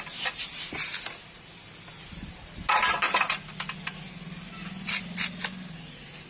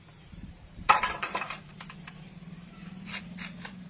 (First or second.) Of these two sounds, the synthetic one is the second